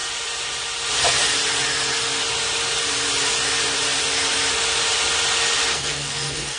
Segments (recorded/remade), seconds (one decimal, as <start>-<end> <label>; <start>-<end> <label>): 0.0-5.7 recorded; 5.7-6.6 remade